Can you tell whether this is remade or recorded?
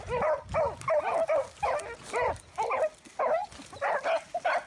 recorded